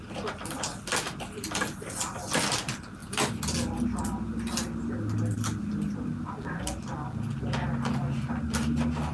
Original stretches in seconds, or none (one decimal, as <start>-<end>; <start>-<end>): 0.0-9.1